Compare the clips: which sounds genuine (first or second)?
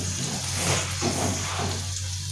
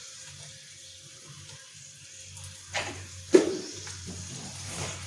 first